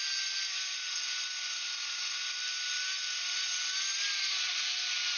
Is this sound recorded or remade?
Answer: recorded